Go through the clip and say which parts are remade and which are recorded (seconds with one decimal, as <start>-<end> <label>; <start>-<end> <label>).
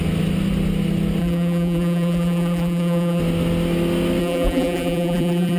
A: 0.0-1.2 recorded; 1.2-3.2 remade; 3.2-4.2 recorded; 4.2-5.6 remade